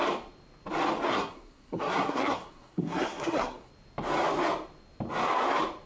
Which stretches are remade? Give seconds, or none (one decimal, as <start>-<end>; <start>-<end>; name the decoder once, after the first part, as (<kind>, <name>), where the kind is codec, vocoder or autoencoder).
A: 1.1-3.7 (codec, SNAC)